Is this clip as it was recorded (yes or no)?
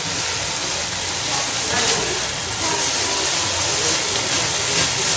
yes